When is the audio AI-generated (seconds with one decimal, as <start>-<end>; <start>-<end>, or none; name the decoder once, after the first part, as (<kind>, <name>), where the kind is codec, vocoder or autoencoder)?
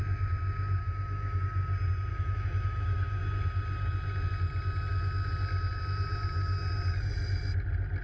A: 0.8-1.4 (autoencoder, DAC-VAE); 2.1-3.2